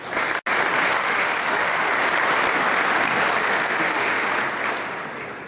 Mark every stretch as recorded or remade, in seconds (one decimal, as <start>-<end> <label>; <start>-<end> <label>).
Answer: 0.0-1.0 recorded; 1.0-1.9 remade; 1.9-3.4 recorded; 3.4-4.3 remade; 4.3-5.5 recorded